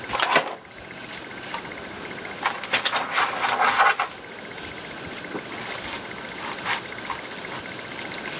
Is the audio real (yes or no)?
yes